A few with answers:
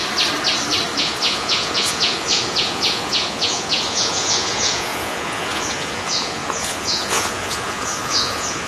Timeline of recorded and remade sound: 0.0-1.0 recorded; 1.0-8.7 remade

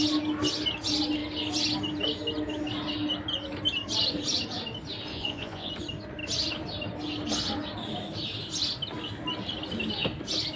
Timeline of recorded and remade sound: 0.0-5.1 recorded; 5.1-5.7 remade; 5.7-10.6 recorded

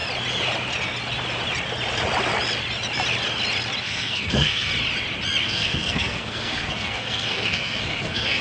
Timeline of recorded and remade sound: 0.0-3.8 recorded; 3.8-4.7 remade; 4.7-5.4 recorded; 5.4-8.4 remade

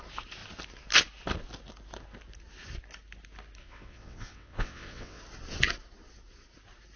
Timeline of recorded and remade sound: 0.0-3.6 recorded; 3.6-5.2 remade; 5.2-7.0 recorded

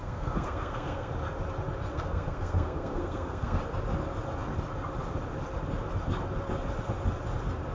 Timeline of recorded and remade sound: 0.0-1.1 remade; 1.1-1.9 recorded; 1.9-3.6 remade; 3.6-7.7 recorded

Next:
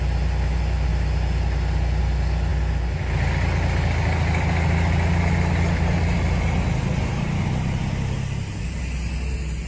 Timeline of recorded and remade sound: 0.0-9.7 recorded

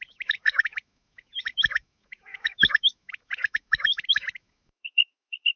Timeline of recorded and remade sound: 0.0-5.6 remade

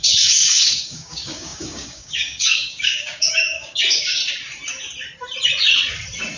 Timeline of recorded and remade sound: 0.0-4.2 remade; 4.2-6.4 recorded